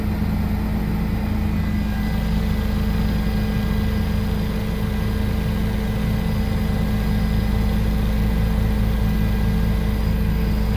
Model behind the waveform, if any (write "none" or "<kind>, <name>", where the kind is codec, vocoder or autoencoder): none